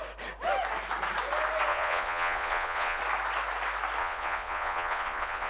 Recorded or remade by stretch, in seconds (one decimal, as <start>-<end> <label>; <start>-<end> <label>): 0.0-1.7 recorded; 1.7-3.0 remade; 3.0-4.0 recorded; 4.0-5.5 remade